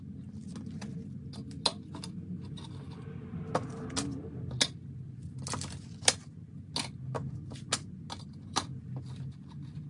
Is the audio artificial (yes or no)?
no